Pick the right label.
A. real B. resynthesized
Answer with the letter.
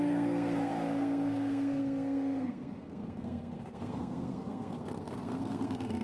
B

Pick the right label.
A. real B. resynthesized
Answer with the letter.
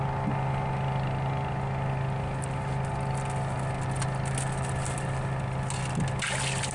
A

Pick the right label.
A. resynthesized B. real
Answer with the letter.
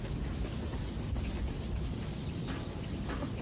B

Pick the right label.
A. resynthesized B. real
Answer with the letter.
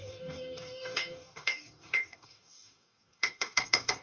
A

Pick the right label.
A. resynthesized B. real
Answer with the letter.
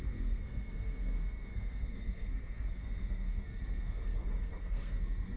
A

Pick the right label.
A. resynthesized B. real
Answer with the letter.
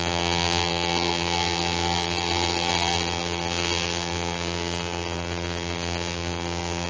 A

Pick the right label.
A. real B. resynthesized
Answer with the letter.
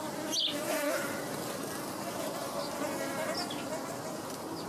A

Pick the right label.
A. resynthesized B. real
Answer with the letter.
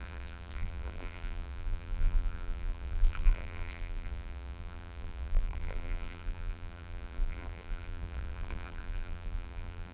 A